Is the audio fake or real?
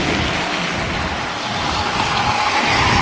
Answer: real